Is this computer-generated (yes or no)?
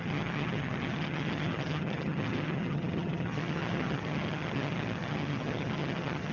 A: yes